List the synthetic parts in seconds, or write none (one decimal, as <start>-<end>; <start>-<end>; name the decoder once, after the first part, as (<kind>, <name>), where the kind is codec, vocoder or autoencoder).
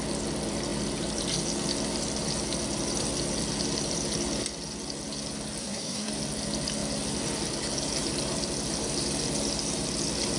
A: 5.6-6.1 (codec, SNAC)